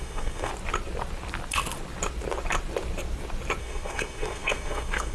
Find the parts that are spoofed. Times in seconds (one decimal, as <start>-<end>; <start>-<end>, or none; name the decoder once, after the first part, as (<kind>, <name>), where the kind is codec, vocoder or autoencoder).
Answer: 0.0-0.5 (codec, SNAC); 3.6-5.1